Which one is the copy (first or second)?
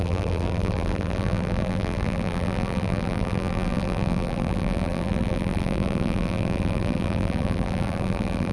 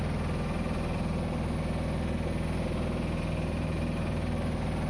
first